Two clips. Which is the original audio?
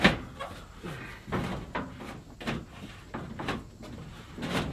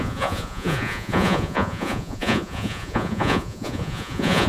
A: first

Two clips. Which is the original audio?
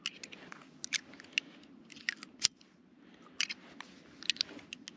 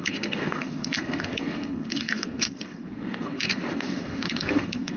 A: first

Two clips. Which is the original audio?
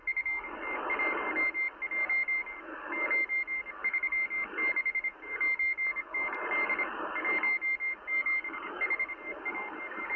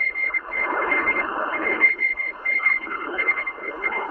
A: first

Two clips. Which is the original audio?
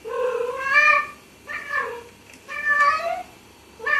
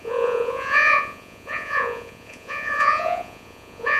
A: first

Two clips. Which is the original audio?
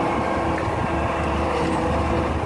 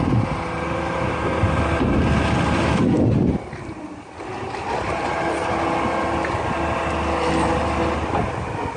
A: second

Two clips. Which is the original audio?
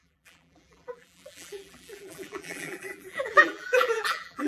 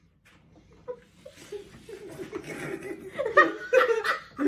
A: second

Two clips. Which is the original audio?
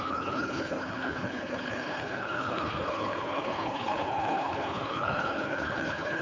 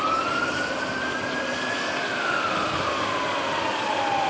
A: second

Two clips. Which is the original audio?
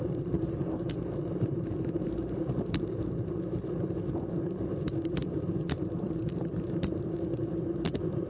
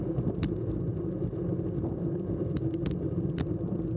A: second